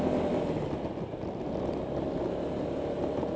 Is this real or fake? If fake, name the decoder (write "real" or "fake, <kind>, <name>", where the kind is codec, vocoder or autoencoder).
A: real